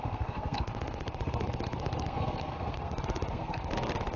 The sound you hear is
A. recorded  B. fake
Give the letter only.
B